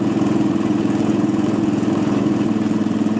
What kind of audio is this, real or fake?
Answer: fake